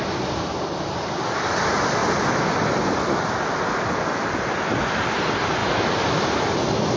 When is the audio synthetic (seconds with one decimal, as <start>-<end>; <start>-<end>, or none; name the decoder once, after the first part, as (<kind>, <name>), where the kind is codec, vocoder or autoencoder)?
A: none